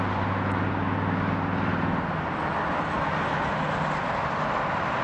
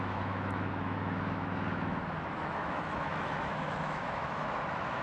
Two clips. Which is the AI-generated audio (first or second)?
second